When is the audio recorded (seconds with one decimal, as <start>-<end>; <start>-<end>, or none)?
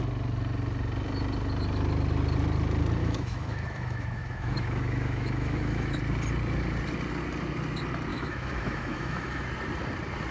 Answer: 0.0-3.0; 6.0-8.1; 9.5-10.3